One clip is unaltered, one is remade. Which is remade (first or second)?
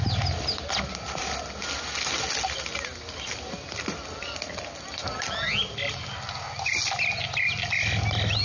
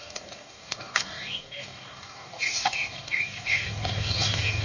second